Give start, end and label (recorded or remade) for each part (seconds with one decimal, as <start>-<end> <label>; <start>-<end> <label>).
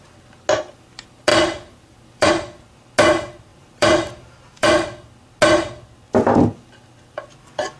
0.0-1.3 recorded; 1.3-2.3 remade; 2.3-3.5 recorded; 3.5-5.1 remade; 5.1-7.8 recorded